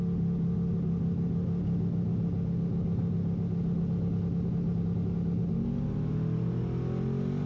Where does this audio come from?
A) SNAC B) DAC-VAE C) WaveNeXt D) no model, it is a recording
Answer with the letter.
D